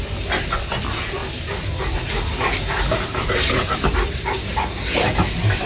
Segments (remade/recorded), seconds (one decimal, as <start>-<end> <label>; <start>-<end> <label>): 0.0-5.7 recorded